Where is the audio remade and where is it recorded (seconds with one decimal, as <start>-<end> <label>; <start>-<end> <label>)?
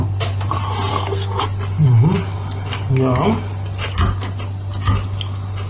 0.0-0.9 recorded; 0.9-1.4 remade; 1.4-5.7 recorded